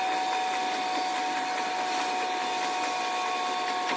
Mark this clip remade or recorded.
recorded